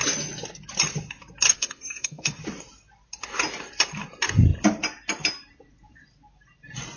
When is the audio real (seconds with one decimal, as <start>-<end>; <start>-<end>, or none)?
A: 0.0-1.5; 2.4-7.0